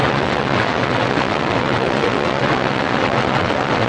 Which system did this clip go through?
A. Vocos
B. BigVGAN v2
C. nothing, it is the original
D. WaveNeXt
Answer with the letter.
D